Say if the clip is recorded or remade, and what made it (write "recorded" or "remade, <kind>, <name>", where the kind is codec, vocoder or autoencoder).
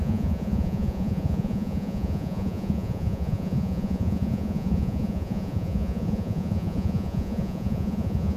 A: remade, vocoder, Vocos